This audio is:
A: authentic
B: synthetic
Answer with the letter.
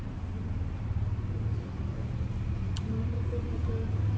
A